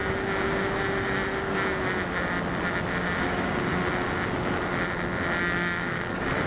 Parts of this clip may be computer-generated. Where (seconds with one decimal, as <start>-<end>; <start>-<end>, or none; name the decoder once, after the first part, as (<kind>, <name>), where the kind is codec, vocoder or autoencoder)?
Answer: 3.2-3.7 (codec, DAC); 5.4-6.5